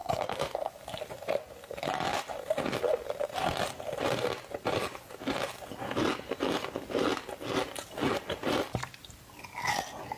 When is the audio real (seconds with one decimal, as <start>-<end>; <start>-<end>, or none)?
0.7-10.2